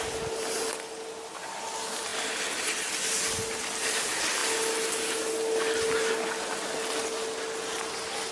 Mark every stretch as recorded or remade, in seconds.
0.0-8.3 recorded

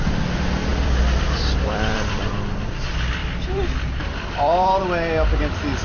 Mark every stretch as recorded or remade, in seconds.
0.0-0.7 recorded; 0.7-2.3 remade; 2.3-3.2 recorded; 3.2-4.8 remade; 4.8-5.8 recorded

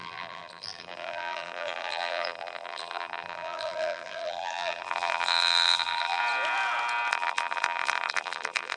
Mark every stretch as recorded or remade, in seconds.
0.0-6.2 remade; 6.2-7.1 recorded; 7.1-8.8 remade

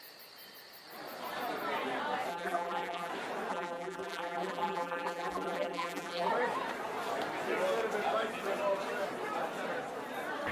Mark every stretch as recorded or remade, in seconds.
0.0-2.3 recorded; 2.3-3.1 remade; 3.1-3.5 recorded; 3.5-6.3 remade; 6.3-10.5 recorded

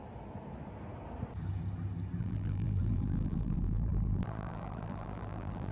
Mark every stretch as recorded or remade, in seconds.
0.0-2.2 recorded; 2.2-5.7 remade

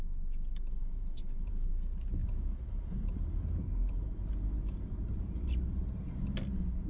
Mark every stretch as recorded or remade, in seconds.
0.0-0.8 recorded; 0.8-1.7 remade; 1.7-2.2 recorded; 2.2-6.2 remade; 6.2-6.9 recorded